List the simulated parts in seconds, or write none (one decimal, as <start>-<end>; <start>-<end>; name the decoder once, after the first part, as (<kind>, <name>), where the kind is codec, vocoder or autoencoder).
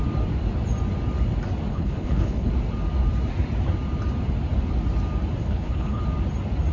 1.7-2.5 (codec, HILCodec); 5.4-6.0